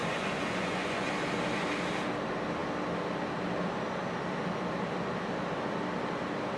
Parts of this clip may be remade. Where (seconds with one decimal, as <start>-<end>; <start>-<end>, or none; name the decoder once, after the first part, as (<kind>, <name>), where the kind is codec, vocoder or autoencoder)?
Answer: 0.0-1.1 (vocoder, Vocos)